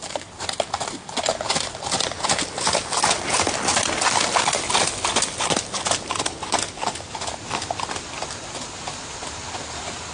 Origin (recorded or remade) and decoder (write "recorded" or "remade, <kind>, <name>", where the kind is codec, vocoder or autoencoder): recorded